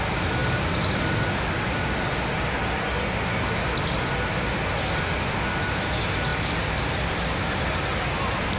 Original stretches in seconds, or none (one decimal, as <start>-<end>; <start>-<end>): 0.0-0.4; 1.1-6.3; 8.0-8.6